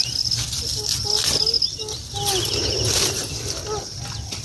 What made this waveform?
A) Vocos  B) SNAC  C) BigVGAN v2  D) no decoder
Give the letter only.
D